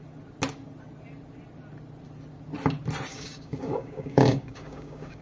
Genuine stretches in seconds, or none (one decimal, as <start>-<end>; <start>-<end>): 0.0-3.1